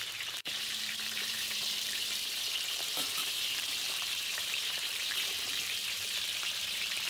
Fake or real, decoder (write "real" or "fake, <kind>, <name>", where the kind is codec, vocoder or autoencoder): fake, vocoder, BigVGAN v2